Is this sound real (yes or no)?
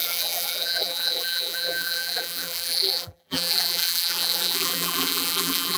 no